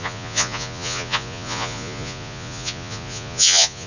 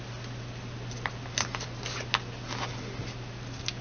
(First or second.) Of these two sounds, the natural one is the second